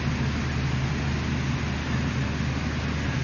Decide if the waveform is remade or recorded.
recorded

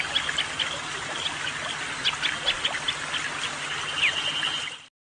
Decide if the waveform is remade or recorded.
recorded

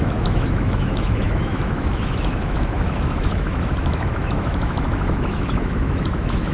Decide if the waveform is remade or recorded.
remade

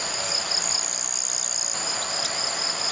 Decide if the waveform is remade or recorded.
recorded